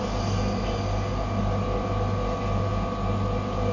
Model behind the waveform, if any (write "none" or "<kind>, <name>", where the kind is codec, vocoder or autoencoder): none